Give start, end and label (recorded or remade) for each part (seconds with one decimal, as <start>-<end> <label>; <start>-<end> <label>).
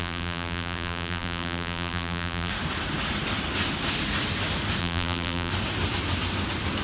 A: 0.0-2.5 remade; 2.5-4.8 recorded; 4.8-5.5 remade; 5.5-6.8 recorded